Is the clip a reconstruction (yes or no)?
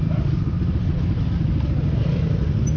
no